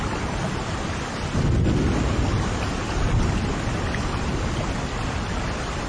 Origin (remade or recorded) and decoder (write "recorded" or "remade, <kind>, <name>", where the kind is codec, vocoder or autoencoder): recorded